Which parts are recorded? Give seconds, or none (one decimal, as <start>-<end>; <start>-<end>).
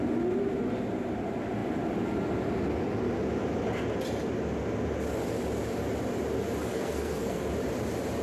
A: 0.0-6.7; 7.4-8.2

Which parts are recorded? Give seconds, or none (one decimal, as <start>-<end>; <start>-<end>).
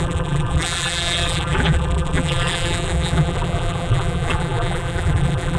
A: none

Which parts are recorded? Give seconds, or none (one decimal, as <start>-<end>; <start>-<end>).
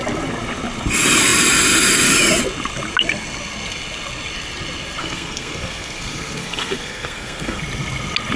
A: 0.0-5.0; 7.6-8.4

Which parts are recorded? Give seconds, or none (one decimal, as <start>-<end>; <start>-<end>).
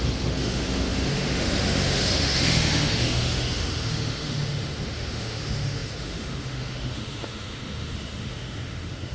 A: none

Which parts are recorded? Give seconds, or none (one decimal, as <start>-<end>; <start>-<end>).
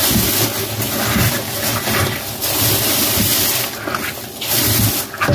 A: 0.0-0.5; 3.2-5.3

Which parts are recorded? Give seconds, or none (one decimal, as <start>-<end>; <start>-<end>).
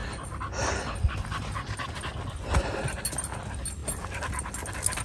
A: 0.0-5.0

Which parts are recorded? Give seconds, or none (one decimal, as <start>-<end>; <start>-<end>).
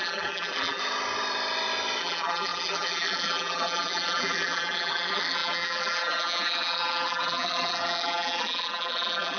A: 0.8-2.0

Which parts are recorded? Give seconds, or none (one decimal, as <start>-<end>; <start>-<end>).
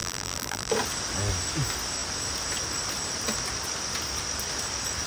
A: 0.7-5.1